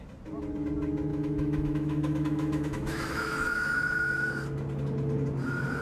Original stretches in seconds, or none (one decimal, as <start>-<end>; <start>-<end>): 0.0-1.1; 4.3-5.8